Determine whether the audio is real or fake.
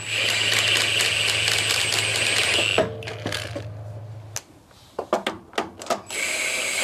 real